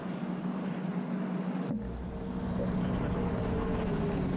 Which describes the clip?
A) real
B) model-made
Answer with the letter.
A